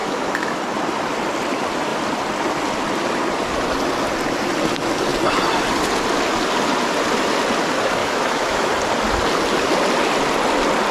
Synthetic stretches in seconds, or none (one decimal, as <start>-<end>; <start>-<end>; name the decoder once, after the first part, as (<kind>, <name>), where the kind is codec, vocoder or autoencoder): 0.0-0.6 (autoencoder, DAC-VAE); 8.0-8.7